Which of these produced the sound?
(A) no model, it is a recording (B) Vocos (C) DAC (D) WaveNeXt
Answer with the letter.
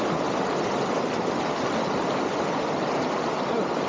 A